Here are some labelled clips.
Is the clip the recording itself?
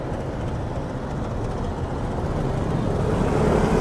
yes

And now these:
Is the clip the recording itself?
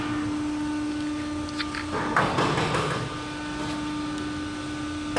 yes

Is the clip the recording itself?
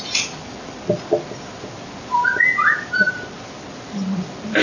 yes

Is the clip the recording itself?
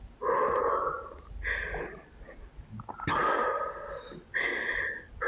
yes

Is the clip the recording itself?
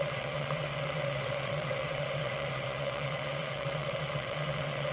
no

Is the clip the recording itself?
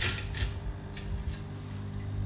yes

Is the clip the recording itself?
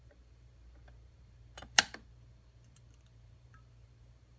no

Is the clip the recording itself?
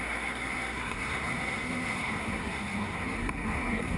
no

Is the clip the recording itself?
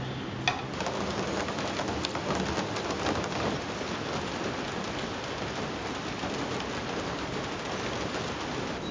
yes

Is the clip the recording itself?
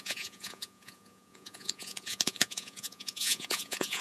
no